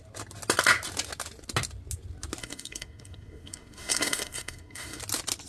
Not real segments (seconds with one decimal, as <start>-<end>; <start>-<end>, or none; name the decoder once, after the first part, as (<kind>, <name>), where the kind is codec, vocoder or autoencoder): 2.4-5.0 (codec, SNAC)